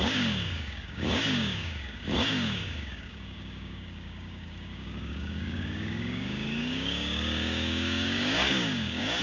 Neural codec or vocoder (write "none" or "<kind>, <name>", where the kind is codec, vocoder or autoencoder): codec, DAC